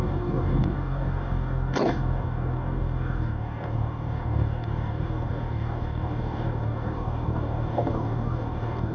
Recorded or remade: remade